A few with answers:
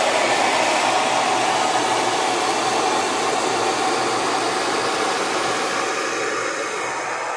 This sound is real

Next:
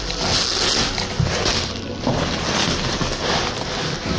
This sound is real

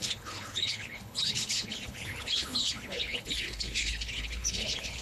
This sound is fake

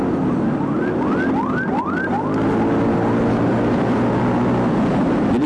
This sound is real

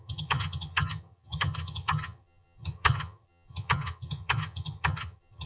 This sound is fake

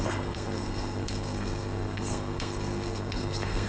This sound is fake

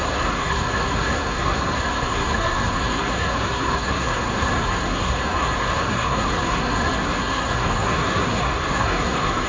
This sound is fake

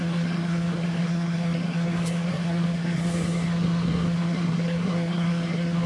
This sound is fake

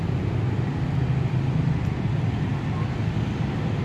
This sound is real